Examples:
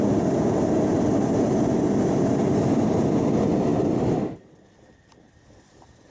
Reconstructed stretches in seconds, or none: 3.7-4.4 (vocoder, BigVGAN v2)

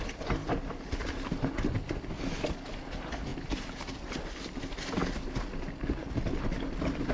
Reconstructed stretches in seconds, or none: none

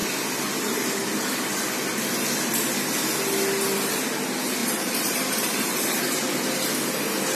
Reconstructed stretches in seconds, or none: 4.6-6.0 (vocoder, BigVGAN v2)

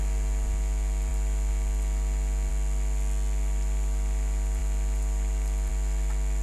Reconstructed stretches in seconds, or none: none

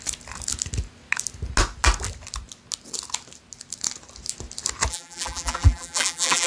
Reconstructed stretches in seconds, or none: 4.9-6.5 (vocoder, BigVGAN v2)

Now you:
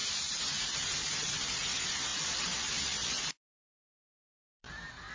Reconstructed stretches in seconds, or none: 0.0-1.1 (vocoder, BigVGAN v2); 2.1-5.1

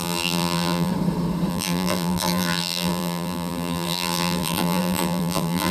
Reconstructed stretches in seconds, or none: 0.0-0.9 (vocoder, BigVGAN v2); 1.5-5.7

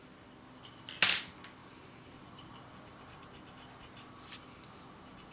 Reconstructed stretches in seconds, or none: 1.6-2.6 (vocoder, BigVGAN v2)